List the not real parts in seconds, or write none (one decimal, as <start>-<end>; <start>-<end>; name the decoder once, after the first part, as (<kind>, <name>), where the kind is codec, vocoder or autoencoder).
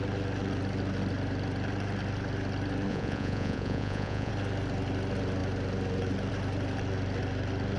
2.9-4.3 (vocoder, Vocos)